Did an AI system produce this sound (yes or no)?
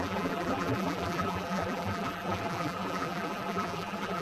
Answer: yes